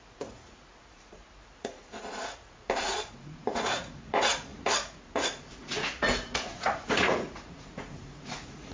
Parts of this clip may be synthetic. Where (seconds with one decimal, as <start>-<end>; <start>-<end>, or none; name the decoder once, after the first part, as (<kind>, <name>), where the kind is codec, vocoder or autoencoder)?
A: 0.0-8.7 (vocoder, Vocos)